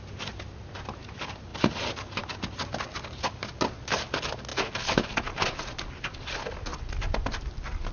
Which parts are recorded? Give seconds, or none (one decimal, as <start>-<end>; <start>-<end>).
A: 0.0-7.9